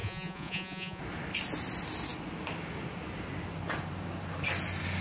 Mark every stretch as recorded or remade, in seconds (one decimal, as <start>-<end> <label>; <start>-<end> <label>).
0.0-1.0 remade; 1.0-5.0 recorded